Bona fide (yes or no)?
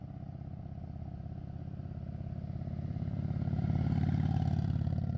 no